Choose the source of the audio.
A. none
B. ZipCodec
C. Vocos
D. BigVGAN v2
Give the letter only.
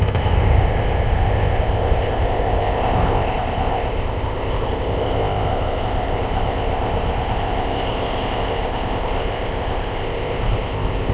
B